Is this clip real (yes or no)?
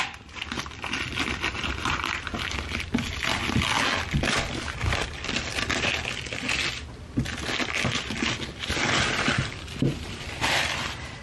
yes